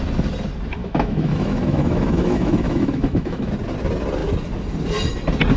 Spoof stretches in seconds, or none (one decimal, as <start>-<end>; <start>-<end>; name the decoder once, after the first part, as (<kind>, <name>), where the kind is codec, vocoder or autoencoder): 0.8-3.5 (autoencoder, DAC-VAE)